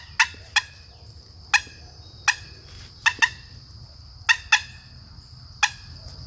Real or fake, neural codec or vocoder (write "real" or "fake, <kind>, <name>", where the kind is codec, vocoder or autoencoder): real